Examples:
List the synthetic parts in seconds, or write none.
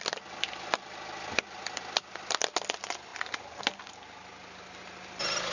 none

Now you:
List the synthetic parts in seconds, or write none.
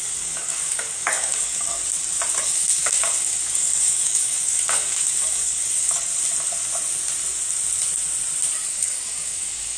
0.0-1.8; 2.4-6.1; 8.7-9.8